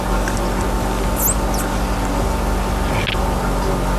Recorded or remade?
recorded